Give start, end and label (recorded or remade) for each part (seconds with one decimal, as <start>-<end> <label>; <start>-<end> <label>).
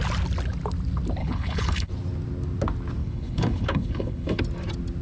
0.0-1.2 recorded; 1.2-1.9 remade; 1.9-3.0 recorded; 3.0-4.4 remade; 4.4-5.0 recorded